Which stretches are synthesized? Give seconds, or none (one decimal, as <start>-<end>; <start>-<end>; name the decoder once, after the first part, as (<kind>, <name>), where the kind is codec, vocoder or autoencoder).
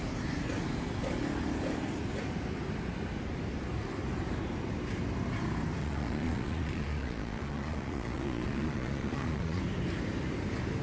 5.8-9.6 (vocoder, Vocos)